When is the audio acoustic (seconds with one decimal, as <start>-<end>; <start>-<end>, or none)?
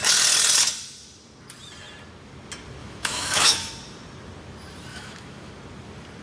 0.0-2.8; 3.7-4.9; 5.5-6.2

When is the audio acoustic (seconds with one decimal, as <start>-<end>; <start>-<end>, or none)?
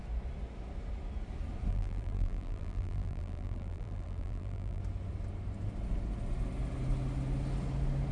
0.0-1.7; 4.8-8.1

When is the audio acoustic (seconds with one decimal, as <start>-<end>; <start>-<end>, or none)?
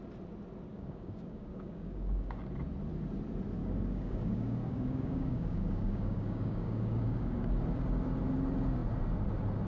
0.0-0.7; 2.4-3.6; 7.5-9.7